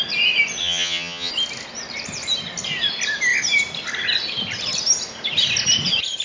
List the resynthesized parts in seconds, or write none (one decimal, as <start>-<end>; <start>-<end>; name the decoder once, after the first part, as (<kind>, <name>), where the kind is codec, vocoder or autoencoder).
0.6-1.3 (vocoder, HiFi-GAN)